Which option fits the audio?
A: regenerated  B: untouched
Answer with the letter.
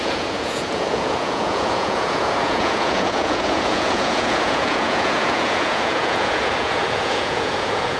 A